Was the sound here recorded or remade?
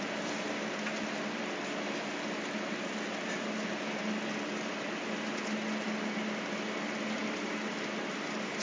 recorded